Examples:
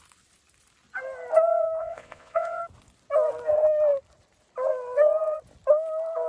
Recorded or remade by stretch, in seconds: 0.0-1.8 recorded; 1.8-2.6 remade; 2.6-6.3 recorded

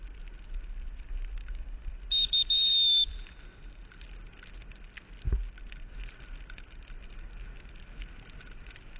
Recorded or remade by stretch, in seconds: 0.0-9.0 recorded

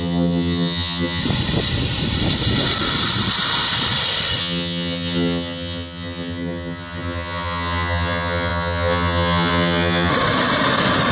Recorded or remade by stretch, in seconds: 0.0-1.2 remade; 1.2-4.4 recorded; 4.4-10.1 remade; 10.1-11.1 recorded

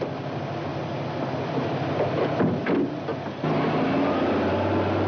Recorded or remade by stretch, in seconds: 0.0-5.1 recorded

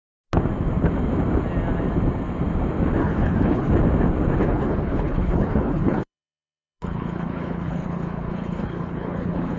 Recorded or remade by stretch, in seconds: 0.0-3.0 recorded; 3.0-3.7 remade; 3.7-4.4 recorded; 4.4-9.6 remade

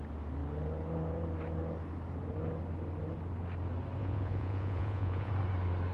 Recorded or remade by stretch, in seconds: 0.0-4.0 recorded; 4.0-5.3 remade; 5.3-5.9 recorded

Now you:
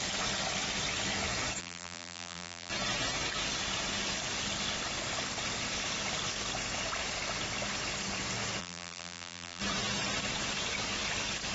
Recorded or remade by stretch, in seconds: 0.0-1.6 recorded; 1.6-2.7 remade; 2.7-8.6 recorded; 8.6-9.6 remade; 9.6-11.5 recorded

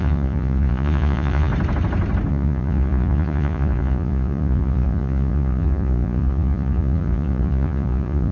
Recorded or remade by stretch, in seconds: 0.0-1.5 remade; 1.5-2.3 recorded; 2.3-8.3 remade